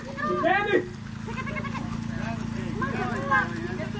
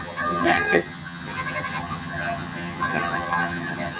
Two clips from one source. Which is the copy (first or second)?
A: second